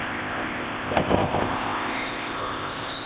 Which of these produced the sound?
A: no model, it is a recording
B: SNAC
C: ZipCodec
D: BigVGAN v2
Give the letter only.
C